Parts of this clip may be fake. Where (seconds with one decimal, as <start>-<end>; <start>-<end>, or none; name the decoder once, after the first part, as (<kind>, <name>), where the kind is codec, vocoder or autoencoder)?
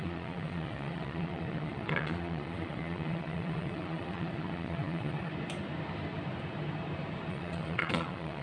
0.0-5.3 (vocoder, Vocos); 7.3-8.4